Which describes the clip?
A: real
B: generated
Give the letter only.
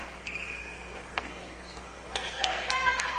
B